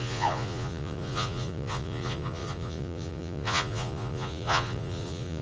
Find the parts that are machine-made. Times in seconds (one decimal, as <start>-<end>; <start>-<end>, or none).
0.0-5.4